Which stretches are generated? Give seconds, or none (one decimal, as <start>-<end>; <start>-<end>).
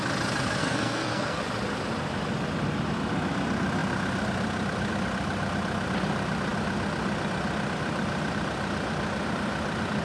0.6-1.4